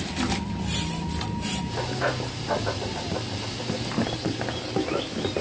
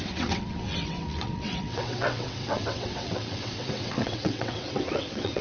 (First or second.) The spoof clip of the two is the second